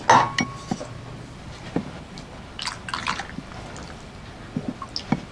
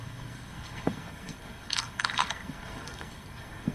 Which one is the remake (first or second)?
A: second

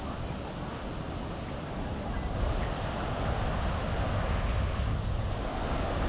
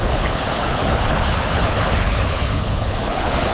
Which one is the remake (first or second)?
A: second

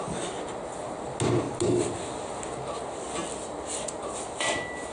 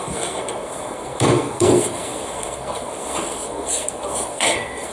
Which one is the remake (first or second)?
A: second